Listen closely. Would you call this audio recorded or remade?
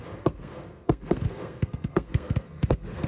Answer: remade